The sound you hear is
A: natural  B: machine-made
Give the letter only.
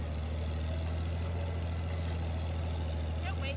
A